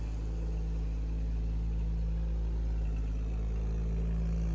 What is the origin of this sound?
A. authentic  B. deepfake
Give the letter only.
A